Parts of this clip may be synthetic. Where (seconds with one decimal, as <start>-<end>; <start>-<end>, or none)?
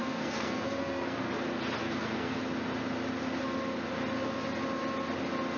0.0-1.2; 1.8-2.4